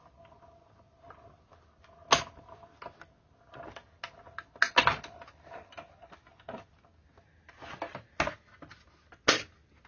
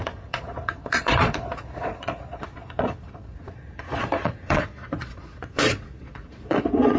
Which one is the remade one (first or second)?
second